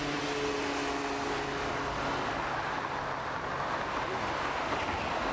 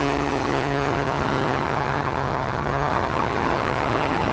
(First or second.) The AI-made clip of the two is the second